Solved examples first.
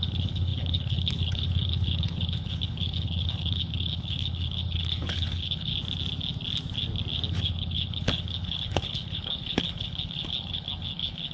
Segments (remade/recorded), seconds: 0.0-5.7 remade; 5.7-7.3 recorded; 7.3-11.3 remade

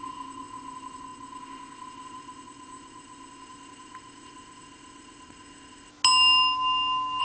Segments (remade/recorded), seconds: 0.0-5.9 remade; 5.9-7.2 recorded

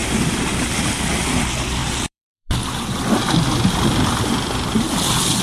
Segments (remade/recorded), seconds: 0.0-0.9 remade; 0.9-1.8 recorded; 1.8-3.7 remade; 3.7-5.4 recorded

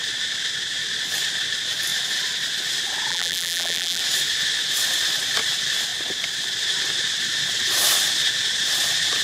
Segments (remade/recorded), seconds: 0.0-3.1 recorded; 3.1-4.0 remade; 4.0-9.2 recorded

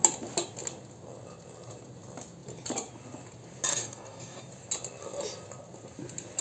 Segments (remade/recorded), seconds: 0.0-3.7 recorded; 3.7-4.4 remade; 4.4-6.4 recorded